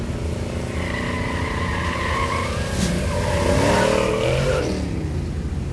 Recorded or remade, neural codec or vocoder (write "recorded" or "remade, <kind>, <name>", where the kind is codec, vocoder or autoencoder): recorded